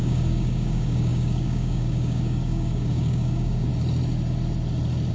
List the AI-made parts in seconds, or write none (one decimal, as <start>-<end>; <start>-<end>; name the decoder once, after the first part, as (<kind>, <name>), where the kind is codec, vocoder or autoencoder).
0.0-3.7 (codec, DAC)